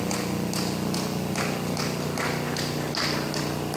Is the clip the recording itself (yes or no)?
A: yes